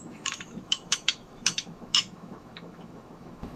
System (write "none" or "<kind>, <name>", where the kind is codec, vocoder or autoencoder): autoencoder, DAC-VAE